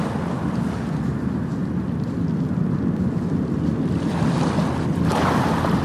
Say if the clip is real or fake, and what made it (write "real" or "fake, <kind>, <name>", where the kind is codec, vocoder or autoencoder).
real